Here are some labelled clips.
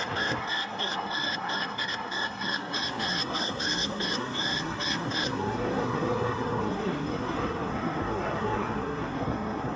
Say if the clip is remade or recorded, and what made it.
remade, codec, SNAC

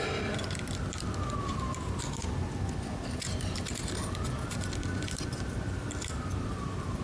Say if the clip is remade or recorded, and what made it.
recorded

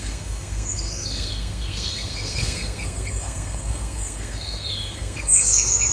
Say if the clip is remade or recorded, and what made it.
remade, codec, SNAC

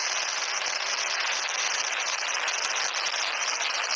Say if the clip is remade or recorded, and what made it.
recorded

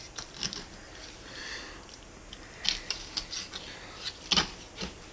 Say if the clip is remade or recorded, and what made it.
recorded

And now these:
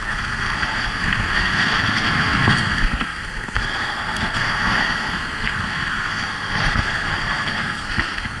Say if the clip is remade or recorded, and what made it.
remade, codec, SNAC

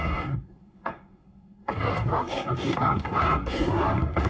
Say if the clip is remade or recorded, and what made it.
remade, codec, SNAC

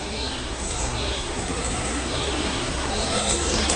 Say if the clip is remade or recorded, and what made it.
remade, codec, SNAC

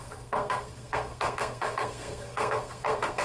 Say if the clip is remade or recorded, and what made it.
remade, codec, SNAC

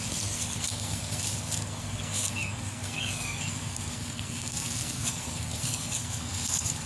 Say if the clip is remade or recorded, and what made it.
remade, codec, SNAC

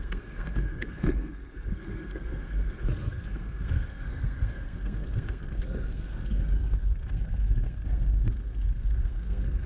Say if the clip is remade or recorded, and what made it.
remade, codec, SNAC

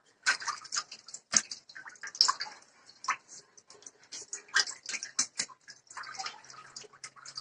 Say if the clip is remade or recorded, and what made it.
recorded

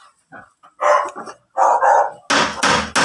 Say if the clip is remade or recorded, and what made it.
recorded